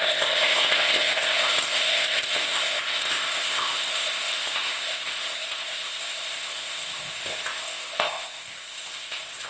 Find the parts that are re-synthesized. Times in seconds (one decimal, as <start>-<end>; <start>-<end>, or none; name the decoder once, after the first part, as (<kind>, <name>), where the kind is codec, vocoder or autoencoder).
0.0-9.5 (codec, ZipCodec)